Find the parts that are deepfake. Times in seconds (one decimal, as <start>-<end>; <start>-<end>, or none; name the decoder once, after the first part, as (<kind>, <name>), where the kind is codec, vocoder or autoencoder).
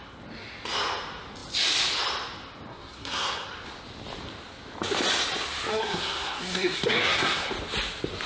2.7-3.5 (codec, SNAC); 5.7-7.5